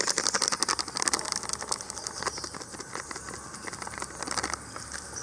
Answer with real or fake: real